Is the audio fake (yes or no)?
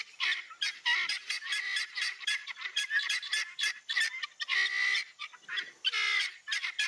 no